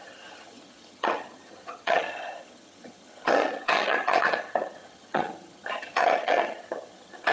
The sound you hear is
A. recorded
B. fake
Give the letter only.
B